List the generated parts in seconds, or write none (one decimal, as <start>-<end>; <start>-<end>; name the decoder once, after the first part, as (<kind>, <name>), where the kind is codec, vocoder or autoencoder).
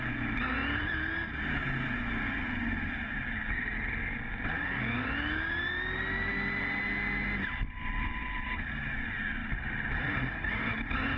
none